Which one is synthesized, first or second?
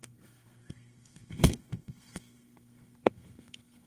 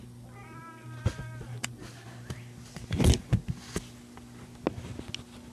first